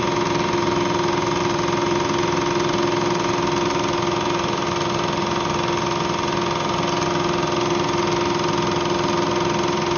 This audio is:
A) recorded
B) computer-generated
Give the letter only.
A